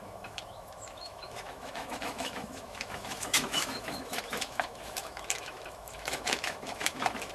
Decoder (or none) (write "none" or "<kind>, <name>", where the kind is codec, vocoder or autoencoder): autoencoder, DAC-VAE